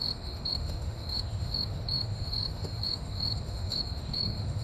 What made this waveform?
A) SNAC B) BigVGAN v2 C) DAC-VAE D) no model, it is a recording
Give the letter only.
C